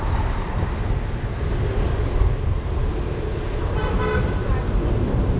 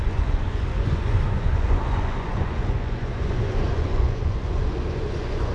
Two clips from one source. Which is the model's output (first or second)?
second